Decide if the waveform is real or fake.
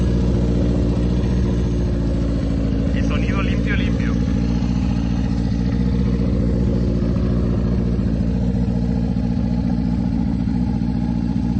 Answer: real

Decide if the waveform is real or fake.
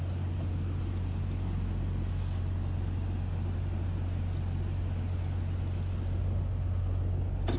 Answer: real